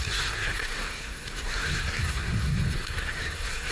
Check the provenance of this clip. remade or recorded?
remade